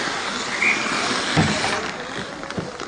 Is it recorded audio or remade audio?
recorded